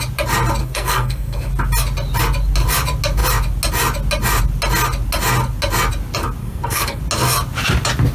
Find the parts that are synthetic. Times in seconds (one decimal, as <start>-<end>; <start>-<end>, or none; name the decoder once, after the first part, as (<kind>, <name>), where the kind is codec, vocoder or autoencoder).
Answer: 0.6-1.5 (codec, SNAC); 6.4-7.0

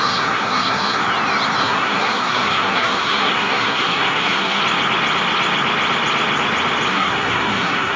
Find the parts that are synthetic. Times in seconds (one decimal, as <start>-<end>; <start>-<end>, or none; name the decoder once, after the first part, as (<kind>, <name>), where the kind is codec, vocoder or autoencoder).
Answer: 0.0-1.0 (codec, SNAC); 1.6-4.6; 6.9-8.0

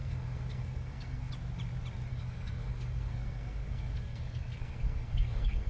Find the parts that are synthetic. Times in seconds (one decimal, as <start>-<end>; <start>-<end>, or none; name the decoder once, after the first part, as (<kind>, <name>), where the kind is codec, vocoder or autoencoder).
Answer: 0.0-1.3 (codec, SNAC); 2.1-5.7

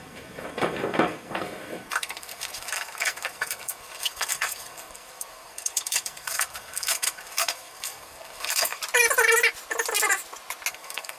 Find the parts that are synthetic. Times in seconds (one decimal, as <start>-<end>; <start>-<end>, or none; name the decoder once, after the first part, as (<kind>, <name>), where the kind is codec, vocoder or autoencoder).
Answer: 0.0-8.8 (codec, SNAC); 10.7-11.2

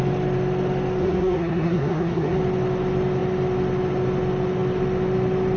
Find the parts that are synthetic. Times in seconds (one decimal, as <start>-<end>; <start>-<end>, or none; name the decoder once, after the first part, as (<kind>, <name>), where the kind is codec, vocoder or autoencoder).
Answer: 1.0-2.4 (codec, SNAC)

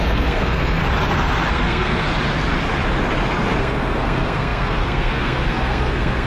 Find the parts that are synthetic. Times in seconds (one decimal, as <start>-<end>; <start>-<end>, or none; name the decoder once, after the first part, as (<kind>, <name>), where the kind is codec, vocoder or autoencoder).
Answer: 0.0-0.8 (codec, SNAC); 1.5-2.1; 3.6-6.3